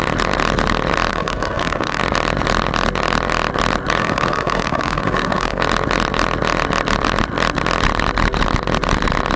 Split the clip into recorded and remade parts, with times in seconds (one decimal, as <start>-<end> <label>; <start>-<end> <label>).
0.0-1.1 recorded; 1.1-2.0 remade; 2.0-4.0 recorded; 4.0-5.6 remade; 5.6-9.4 recorded